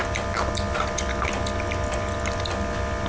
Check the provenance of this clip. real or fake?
real